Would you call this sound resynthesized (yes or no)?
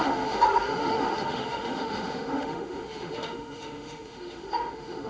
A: yes